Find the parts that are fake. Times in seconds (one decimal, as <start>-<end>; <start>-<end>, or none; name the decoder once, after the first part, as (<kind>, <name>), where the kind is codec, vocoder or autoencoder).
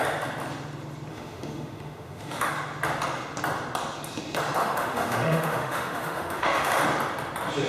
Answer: 1.1-2.5 (autoencoder, DAC-VAE); 4.6-6.8